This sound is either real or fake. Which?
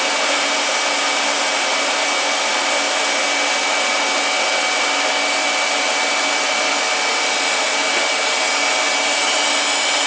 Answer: real